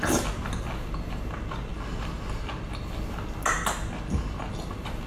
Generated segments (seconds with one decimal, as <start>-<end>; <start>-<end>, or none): none